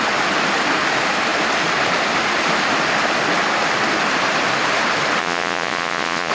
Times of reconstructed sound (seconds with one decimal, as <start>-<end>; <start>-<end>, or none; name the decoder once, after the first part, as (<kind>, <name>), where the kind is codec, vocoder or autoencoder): 5.2-6.3 (vocoder, Vocos)